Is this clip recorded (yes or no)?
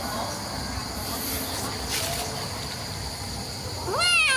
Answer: yes